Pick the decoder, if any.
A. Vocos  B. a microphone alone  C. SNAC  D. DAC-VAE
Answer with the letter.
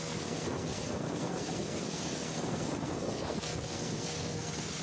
C